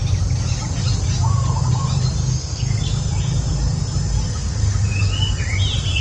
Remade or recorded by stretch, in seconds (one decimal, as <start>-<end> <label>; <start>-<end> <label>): 0.0-2.2 recorded; 2.2-2.7 remade; 2.7-6.0 recorded